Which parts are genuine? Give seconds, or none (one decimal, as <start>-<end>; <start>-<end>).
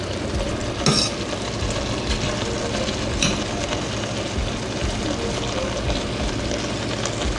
0.0-7.4